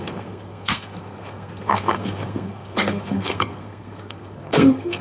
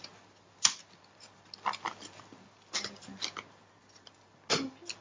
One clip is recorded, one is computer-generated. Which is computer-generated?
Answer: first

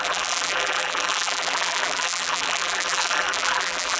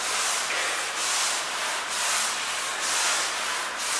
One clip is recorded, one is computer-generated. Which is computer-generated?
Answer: first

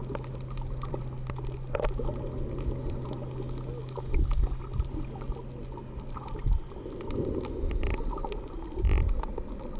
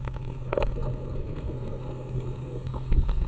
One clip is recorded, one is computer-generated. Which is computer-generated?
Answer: second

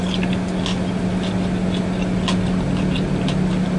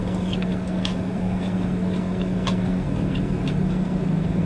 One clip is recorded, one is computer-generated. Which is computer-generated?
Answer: second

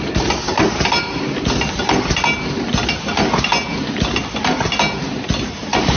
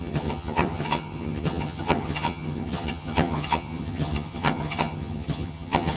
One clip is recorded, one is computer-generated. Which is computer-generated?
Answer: second